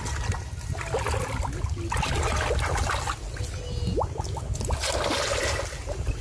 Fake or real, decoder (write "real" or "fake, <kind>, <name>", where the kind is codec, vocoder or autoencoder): real